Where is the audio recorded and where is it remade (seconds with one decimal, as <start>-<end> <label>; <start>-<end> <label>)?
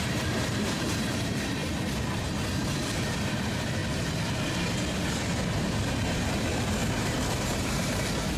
0.0-1.6 remade; 1.6-3.0 recorded; 3.0-3.8 remade; 3.8-6.3 recorded; 6.3-8.4 remade